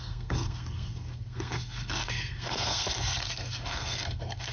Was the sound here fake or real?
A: fake